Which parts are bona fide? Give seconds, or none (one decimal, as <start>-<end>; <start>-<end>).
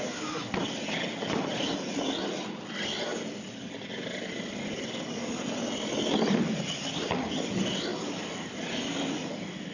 0.0-9.7